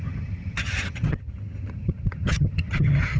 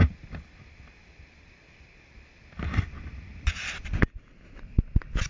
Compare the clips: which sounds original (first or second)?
second